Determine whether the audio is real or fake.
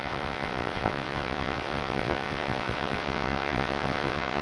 fake